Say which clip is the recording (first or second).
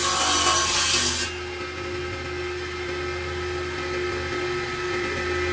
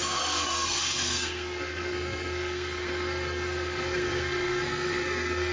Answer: first